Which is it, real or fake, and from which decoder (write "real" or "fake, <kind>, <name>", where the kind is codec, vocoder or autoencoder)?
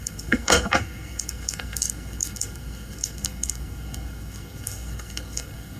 fake, codec, SNAC